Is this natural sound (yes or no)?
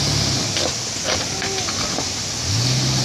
yes